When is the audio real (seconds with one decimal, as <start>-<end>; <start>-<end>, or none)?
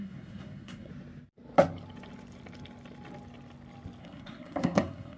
0.9-4.0